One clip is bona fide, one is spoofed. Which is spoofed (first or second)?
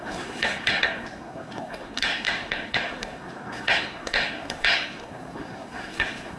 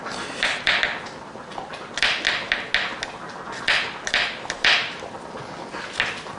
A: first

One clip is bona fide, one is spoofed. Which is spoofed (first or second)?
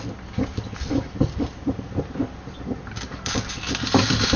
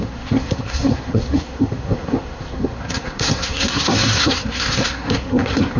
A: second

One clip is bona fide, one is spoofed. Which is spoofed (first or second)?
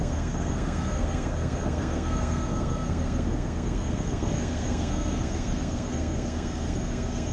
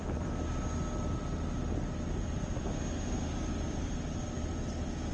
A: first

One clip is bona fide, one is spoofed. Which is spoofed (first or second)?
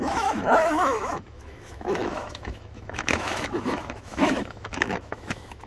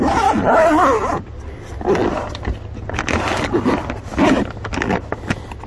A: first